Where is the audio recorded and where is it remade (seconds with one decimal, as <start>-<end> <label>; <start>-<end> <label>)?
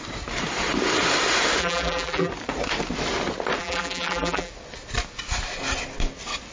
0.0-1.6 recorded; 1.6-2.3 remade; 2.3-3.6 recorded; 3.6-4.5 remade; 4.5-6.5 recorded